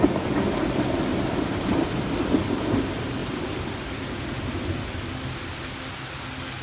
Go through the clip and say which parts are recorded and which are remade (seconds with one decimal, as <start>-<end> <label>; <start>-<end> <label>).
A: 0.0-1.1 recorded; 1.1-2.2 remade; 2.2-3.2 recorded; 3.2-4.8 remade; 4.8-6.6 recorded